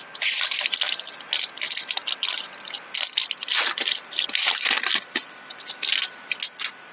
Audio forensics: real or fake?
real